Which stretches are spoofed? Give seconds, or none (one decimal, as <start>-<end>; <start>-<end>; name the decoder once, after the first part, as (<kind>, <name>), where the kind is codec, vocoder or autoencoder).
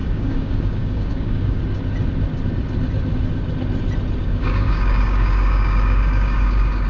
0.0-1.6 (codec, DAC); 4.2-6.9